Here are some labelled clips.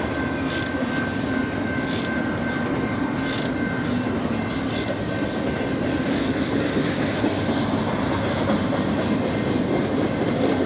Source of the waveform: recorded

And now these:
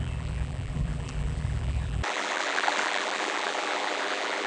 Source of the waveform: remade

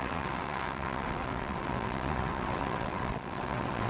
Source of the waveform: remade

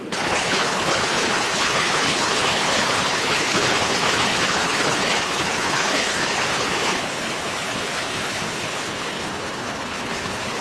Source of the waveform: remade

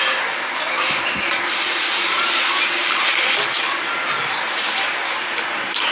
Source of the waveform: recorded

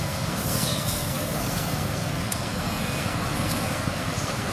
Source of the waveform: remade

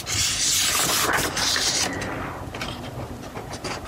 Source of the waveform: recorded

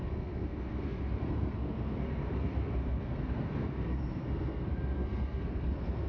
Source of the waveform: remade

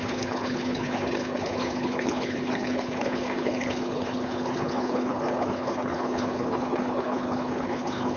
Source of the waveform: remade